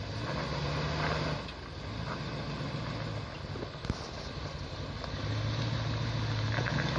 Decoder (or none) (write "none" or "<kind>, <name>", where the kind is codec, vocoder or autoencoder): none